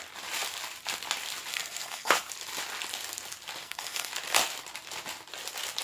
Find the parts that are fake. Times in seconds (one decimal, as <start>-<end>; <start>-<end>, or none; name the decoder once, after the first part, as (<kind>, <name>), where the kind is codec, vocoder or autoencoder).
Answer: 1.5-2.3 (codec, SNAC); 3.6-4.1